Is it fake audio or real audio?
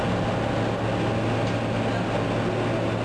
real